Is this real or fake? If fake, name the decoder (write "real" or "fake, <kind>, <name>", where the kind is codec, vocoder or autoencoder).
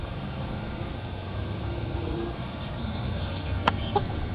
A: fake, codec, SNAC